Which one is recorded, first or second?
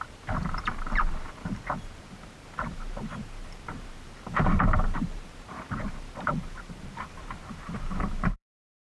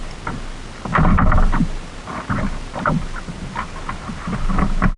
second